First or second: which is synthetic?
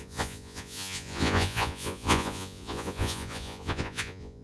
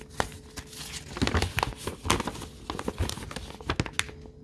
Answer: first